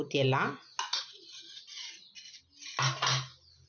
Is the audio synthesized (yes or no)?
no